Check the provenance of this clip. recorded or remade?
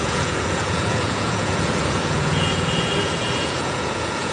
remade